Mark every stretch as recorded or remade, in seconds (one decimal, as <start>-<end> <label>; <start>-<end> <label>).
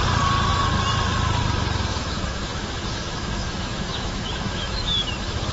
0.0-1.9 recorded; 1.9-5.1 remade; 5.1-5.5 recorded